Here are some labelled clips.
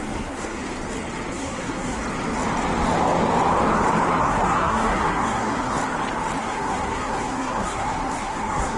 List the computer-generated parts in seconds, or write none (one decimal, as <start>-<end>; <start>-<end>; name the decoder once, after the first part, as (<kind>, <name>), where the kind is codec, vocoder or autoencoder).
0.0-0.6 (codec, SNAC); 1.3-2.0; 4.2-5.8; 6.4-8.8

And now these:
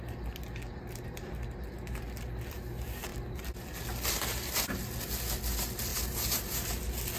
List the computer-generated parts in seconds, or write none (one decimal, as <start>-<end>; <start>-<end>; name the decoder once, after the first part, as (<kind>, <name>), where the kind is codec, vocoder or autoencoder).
5.9-6.7 (vocoder, BigVGAN v2)

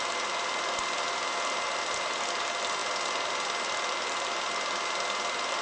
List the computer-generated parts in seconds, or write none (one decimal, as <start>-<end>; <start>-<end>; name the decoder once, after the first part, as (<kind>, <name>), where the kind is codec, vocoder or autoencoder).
none

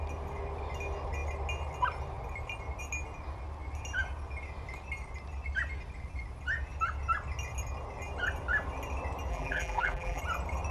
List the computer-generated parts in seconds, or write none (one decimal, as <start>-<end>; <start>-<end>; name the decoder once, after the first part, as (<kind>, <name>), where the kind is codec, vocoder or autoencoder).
9.3-10.2 (vocoder, BigVGAN v2)

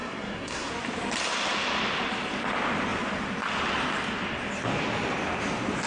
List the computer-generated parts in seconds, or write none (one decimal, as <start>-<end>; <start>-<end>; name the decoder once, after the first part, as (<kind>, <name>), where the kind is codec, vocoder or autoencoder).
0.0-0.7 (codec, SNAC)

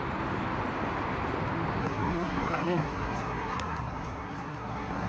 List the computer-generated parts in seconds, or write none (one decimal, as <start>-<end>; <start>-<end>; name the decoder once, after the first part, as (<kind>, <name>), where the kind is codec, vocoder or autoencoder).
1.8-5.1 (codec, SNAC)

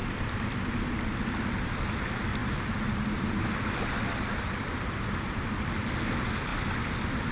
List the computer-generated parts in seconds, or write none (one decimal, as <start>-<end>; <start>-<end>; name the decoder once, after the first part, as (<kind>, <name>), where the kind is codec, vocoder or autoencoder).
none

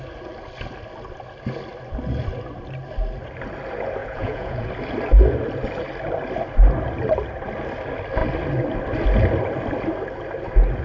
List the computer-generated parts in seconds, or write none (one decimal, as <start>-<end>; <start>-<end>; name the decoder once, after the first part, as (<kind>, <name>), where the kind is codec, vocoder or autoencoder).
4.0-4.7 (vocoder, Vocos)